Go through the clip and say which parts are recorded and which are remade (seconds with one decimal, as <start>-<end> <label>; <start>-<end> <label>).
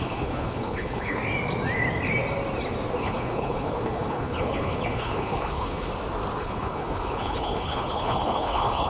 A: 0.0-1.2 remade; 1.2-3.0 recorded; 3.0-5.9 remade; 5.9-6.4 recorded; 6.4-8.9 remade